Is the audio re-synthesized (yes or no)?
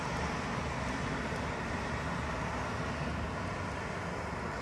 no